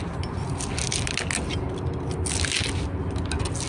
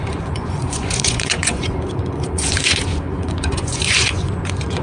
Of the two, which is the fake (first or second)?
second